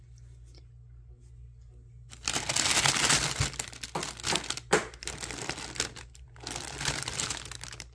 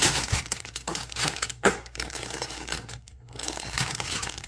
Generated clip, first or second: second